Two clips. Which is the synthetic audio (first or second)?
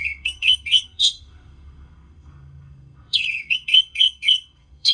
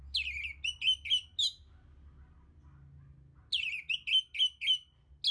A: first